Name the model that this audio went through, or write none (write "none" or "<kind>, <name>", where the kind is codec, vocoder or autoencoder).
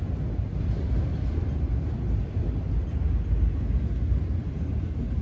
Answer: none